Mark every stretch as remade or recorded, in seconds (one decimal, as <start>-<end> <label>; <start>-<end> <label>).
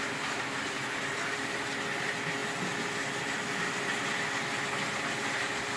0.0-5.8 recorded